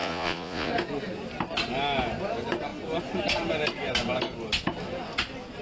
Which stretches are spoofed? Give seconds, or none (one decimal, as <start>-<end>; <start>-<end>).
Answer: 0.0-0.7